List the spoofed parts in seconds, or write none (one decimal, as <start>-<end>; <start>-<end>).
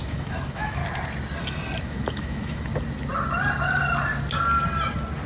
0.0-0.8; 1.8-2.7